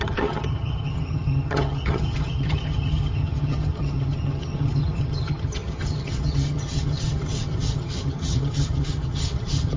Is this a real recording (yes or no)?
no